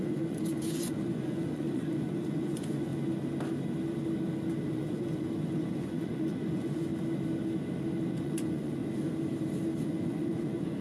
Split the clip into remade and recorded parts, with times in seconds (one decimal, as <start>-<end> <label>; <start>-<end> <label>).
0.0-2.9 remade; 2.9-4.7 recorded; 4.7-6.9 remade; 6.9-8.1 recorded; 8.1-8.8 remade; 8.8-9.8 recorded; 9.8-10.8 remade